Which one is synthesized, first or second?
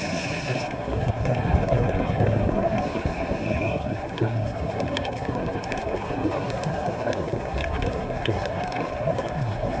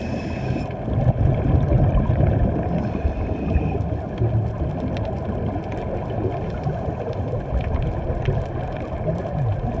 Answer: first